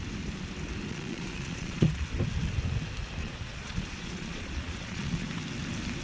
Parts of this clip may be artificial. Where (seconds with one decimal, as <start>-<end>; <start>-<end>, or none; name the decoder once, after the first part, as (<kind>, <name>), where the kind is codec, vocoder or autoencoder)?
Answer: 0.9-2.0 (vocoder, Vocos); 3.2-5.3